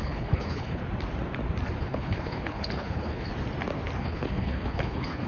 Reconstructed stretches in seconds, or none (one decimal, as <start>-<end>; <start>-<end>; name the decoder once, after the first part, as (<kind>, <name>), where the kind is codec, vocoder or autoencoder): 0.0-0.8 (codec, HILCodec); 1.8-3.3; 4.0-5.3